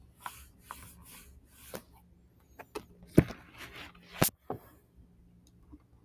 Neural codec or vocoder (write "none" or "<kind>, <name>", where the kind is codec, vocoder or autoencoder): none